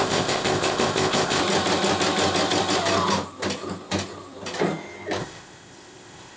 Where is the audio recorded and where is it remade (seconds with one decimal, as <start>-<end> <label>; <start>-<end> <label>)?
0.0-1.4 remade; 1.4-5.2 recorded; 5.2-6.4 remade